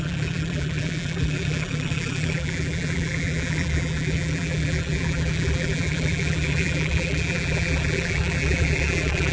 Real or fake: fake